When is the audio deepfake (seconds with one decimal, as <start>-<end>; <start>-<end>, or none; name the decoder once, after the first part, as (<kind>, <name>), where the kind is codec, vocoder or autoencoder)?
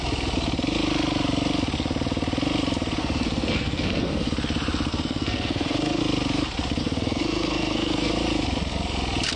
3.0-4.3 (codec, SNAC); 4.9-6.0; 6.8-8.1